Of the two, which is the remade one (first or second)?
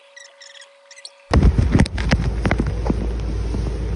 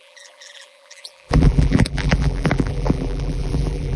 second